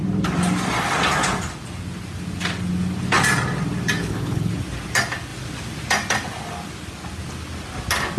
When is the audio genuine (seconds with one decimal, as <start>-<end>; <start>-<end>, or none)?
0.0-4.0; 4.5-8.2